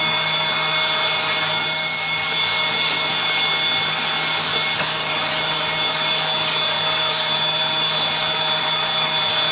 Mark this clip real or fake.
fake